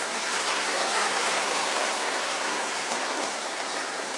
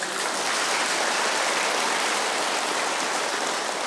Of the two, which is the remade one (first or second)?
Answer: first